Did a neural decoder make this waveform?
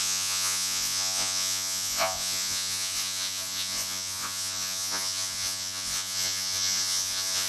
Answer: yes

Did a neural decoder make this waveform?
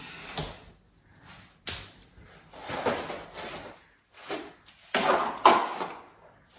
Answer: no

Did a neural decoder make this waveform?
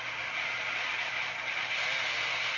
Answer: no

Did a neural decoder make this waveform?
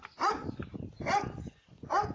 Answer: no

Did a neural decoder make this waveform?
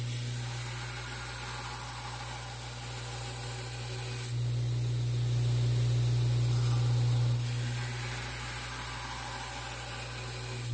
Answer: no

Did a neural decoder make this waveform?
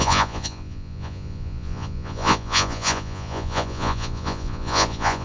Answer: yes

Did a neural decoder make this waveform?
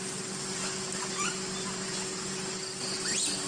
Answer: no